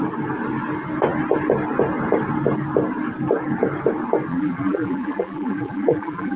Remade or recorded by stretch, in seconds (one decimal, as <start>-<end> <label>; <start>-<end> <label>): 0.0-4.3 recorded; 4.3-6.4 remade